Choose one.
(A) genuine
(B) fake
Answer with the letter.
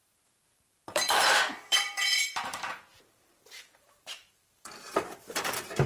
B